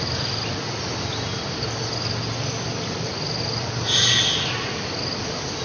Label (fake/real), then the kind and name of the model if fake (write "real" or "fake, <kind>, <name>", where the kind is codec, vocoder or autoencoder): real